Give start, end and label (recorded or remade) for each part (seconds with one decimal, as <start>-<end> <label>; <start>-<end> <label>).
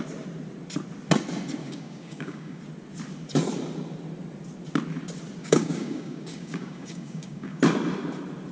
0.0-1.6 recorded; 1.6-2.6 remade; 2.6-5.4 recorded; 5.4-7.6 remade; 7.6-8.5 recorded